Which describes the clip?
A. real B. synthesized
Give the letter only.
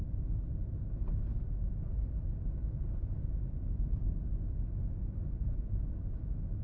A